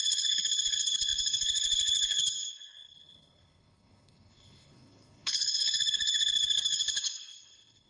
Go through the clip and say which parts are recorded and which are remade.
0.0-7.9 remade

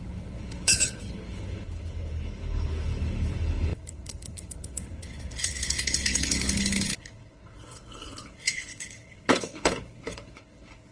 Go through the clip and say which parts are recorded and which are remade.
0.0-10.9 remade

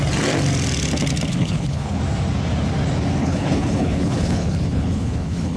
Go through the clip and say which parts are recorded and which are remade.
0.0-1.3 recorded; 1.3-2.0 remade; 2.0-3.2 recorded; 3.2-5.6 remade

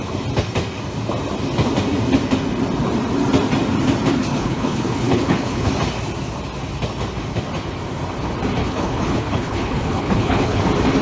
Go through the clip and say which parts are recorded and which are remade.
0.0-4.3 recorded; 4.3-5.7 remade; 5.7-8.6 recorded; 8.6-10.6 remade; 10.6-11.0 recorded

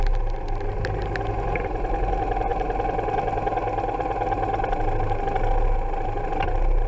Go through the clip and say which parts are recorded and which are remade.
0.0-6.9 recorded

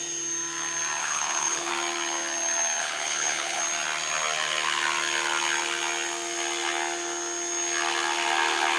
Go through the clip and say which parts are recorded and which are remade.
0.0-1.0 recorded; 1.0-1.7 remade; 1.7-2.8 recorded; 2.8-3.6 remade; 3.6-8.8 recorded

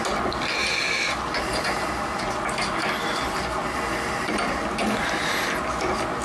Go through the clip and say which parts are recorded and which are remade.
0.0-6.2 recorded